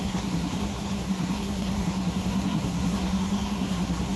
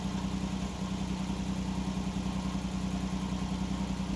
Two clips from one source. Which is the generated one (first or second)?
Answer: first